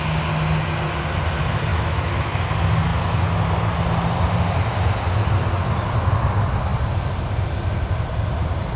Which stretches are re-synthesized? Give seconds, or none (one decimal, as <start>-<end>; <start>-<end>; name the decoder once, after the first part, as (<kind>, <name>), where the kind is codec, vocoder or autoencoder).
1.7-2.4 (autoencoder, DAC-VAE)